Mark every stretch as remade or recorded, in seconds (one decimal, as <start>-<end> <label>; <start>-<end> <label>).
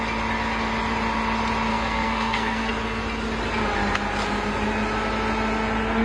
0.0-1.7 recorded; 1.7-2.7 remade; 2.7-6.0 recorded